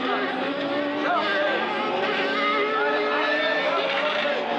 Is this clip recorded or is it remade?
recorded